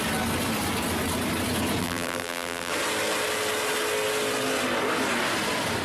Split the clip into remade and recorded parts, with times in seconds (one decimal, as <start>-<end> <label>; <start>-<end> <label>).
0.0-1.8 recorded; 1.8-2.7 remade; 2.7-5.8 recorded